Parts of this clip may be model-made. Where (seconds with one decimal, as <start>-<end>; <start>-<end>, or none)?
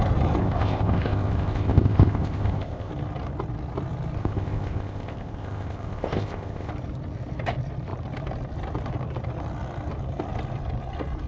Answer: 0.4-2.9; 4.2-6.7